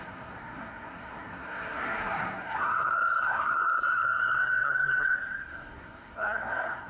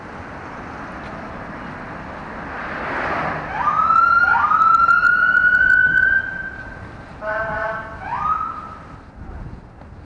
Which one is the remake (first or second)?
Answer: first